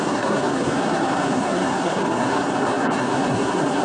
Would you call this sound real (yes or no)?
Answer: no